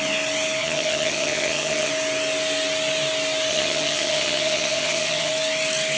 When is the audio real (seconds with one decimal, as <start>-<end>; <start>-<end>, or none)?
0.0-0.6; 1.9-3.5; 5.3-6.0